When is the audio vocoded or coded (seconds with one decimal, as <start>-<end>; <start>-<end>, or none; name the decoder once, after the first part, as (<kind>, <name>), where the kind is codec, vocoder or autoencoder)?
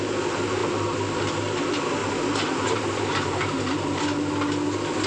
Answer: 2.0-4.3 (vocoder, BigVGAN v2)